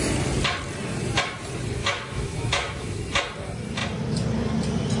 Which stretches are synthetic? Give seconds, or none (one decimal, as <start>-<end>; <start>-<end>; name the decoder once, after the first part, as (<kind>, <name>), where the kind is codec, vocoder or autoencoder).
1.8-3.0 (autoencoder, DAC-VAE)